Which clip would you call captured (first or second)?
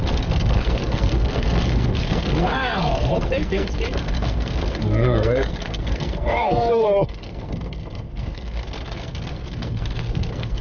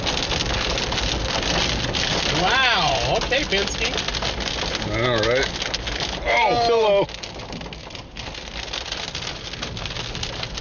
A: second